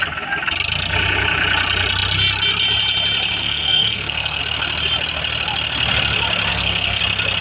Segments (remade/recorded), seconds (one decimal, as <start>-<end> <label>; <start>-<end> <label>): 0.0-3.4 recorded; 3.4-4.4 remade; 4.4-6.5 recorded; 6.5-7.0 remade; 7.0-7.4 recorded